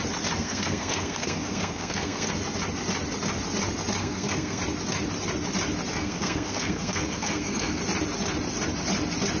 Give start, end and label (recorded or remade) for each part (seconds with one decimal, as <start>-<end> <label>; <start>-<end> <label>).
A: 0.0-0.4 recorded; 0.4-2.3 remade; 2.3-4.0 recorded; 4.0-4.6 remade; 4.6-5.9 recorded; 5.9-7.8 remade; 7.8-9.4 recorded